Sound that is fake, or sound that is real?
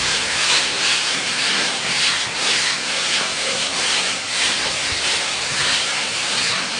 fake